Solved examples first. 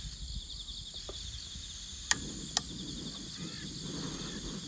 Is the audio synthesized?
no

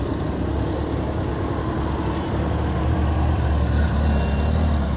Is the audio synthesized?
no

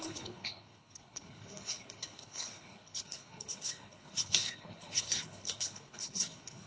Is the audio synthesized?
yes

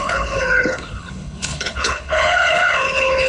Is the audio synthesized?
yes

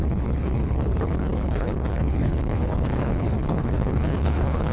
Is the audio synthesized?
yes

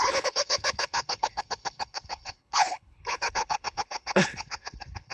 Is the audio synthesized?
yes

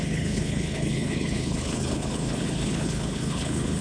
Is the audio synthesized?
yes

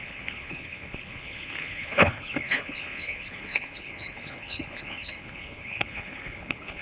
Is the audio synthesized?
yes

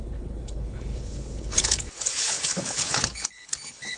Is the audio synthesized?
yes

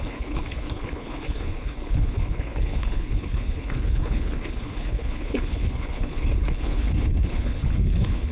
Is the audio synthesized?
yes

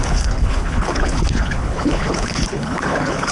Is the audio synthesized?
yes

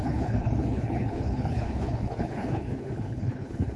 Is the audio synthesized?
yes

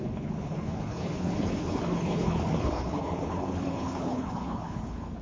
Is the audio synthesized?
yes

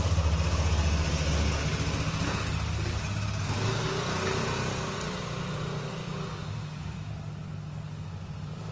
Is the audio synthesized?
no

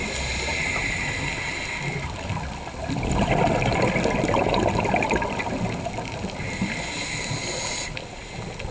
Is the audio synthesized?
no